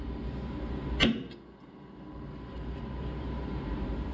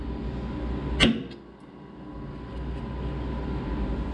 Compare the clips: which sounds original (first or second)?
second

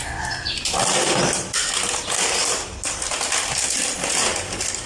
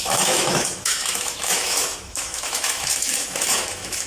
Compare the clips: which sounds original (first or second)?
first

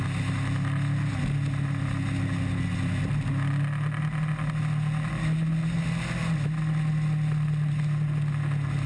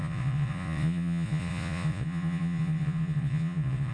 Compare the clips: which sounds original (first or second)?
first